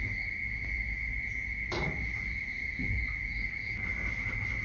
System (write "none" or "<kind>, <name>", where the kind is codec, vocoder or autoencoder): none